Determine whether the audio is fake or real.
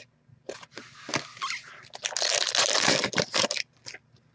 real